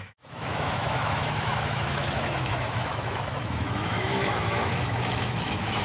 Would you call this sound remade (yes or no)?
yes